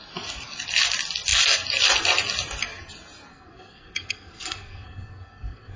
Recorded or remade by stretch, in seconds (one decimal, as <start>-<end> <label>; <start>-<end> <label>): 0.0-3.3 recorded; 3.3-5.8 remade